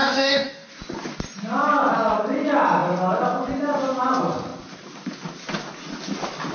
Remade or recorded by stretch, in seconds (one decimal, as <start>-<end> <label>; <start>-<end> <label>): 0.0-0.7 remade; 0.7-6.5 recorded